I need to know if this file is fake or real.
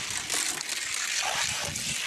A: real